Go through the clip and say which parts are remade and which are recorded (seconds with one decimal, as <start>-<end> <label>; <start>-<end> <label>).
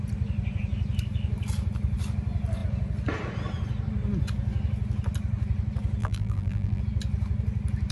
0.0-6.0 recorded; 6.0-6.8 remade; 6.8-7.9 recorded